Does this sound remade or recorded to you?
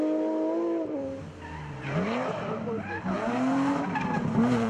recorded